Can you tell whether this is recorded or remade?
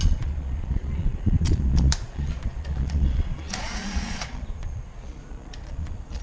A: remade